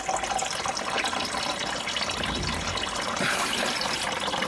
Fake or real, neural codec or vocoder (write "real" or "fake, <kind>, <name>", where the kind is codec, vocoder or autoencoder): real